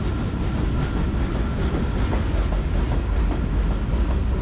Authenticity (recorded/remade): recorded